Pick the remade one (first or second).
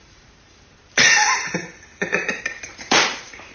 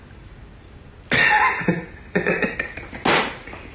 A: first